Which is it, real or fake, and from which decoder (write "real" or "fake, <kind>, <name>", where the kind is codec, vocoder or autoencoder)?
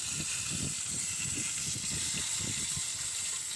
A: real